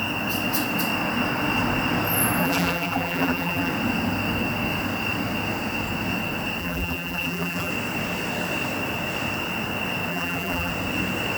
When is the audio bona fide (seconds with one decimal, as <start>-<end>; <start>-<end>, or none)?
0.0-2.4; 3.7-6.6; 7.7-10.1; 10.7-11.4